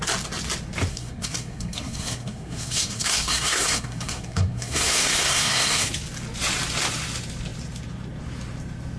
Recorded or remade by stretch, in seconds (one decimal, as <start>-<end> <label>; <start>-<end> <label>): 0.0-0.9 recorded; 0.9-5.9 remade; 5.9-9.0 recorded